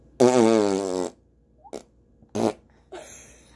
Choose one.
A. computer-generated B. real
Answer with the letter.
B